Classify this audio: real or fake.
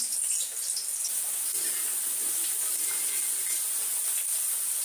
real